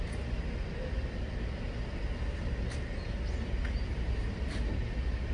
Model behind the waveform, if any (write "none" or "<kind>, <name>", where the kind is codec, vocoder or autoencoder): none